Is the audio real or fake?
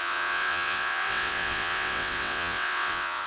fake